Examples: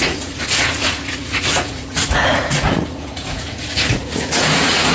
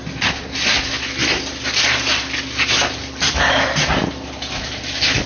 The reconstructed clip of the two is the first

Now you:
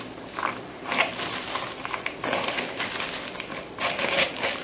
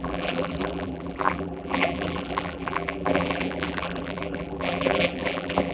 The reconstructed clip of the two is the second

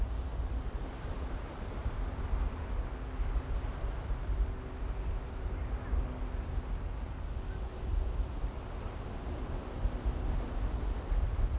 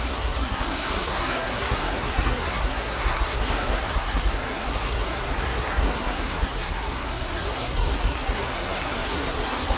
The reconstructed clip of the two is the second